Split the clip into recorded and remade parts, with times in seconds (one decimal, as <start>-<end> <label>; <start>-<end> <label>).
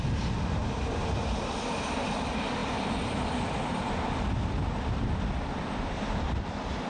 0.0-6.9 recorded